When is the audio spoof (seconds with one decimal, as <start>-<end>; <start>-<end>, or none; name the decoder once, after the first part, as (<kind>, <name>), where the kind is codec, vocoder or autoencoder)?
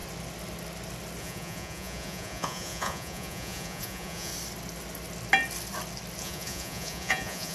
1.2-4.3 (vocoder, Vocos); 6.2-7.5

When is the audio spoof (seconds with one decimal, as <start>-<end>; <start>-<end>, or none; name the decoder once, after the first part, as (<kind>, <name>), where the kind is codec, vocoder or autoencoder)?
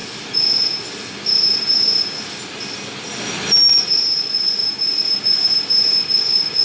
4.0-4.6 (vocoder, Vocos); 5.9-6.6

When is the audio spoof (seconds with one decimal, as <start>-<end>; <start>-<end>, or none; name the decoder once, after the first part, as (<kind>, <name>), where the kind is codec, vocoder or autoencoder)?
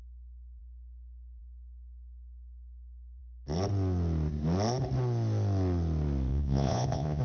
6.3-7.2 (vocoder, Vocos)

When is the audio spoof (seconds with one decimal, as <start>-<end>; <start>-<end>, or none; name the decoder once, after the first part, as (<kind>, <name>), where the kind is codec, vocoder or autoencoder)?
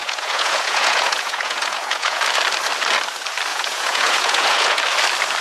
0.0-2.2 (vocoder, Vocos); 3.5-4.8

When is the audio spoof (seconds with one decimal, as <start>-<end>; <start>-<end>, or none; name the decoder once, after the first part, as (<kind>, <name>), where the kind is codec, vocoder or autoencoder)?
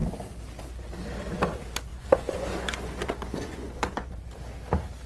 1.9-4.1 (vocoder, Vocos)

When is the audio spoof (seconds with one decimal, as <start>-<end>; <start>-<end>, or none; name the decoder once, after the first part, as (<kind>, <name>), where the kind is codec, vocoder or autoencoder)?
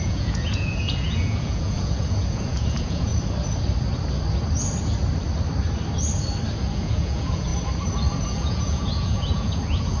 0.0-3.1 (vocoder, Vocos); 6.6-7.5; 8.2-10.0